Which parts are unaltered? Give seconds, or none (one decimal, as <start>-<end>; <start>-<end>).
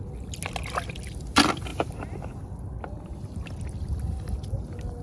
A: 0.0-5.0